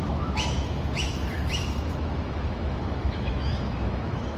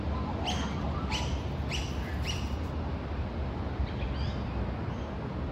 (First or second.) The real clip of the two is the second